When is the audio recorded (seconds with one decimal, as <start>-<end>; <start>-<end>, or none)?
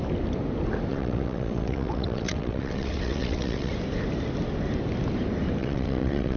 0.0-0.9; 3.7-5.6